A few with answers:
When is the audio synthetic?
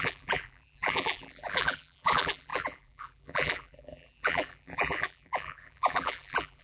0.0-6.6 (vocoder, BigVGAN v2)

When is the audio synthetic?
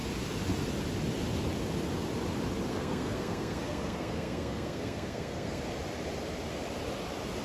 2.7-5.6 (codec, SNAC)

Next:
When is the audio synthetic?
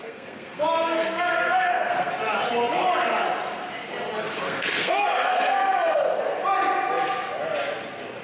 0.0-2.1 (codec, SNAC); 4.3-6.2